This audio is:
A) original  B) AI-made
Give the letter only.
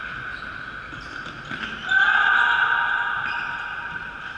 A